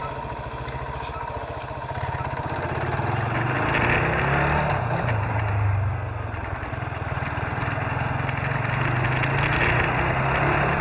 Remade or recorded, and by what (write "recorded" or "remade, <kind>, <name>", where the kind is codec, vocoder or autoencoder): recorded